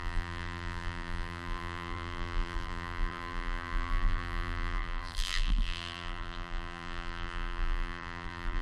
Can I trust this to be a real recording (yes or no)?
no